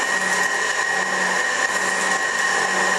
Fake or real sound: real